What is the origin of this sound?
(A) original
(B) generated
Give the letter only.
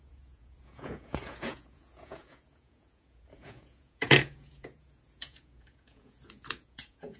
B